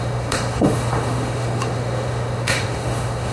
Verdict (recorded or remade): remade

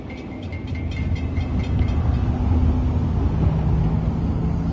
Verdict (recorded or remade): recorded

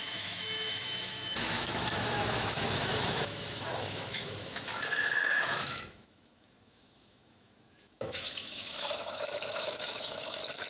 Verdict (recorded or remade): remade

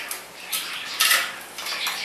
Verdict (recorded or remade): recorded